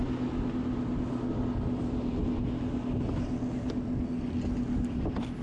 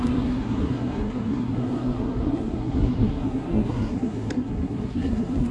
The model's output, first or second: second